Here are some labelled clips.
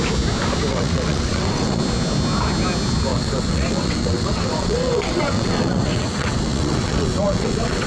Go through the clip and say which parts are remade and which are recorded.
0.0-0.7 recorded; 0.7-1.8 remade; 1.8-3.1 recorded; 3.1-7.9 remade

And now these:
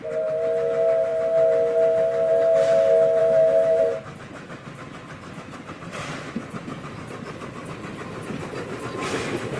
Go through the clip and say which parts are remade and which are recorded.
0.0-3.2 recorded; 3.2-3.8 remade; 3.8-9.6 recorded

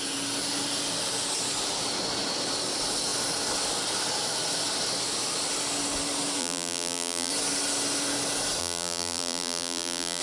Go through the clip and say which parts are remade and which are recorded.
0.0-6.4 recorded; 6.4-7.3 remade; 7.3-8.6 recorded; 8.6-10.2 remade

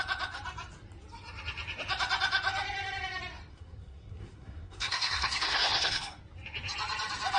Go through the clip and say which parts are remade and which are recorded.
0.0-3.5 recorded; 3.5-6.2 remade; 6.2-7.4 recorded

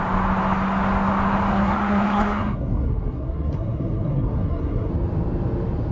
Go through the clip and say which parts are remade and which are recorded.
0.0-1.5 recorded; 1.5-4.9 remade; 4.9-5.9 recorded

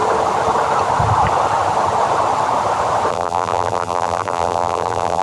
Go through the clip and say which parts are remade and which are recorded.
0.0-3.1 recorded; 3.1-5.2 remade

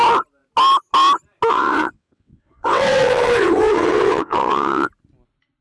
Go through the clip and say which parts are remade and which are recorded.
0.0-1.5 recorded; 1.5-4.9 remade; 4.9-5.6 recorded